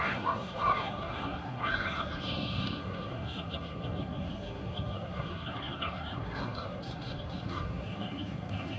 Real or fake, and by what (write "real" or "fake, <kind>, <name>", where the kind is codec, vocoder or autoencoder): fake, codec, SNAC